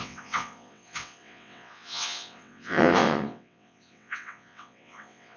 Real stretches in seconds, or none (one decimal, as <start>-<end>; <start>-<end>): none